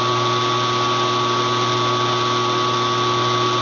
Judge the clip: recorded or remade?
recorded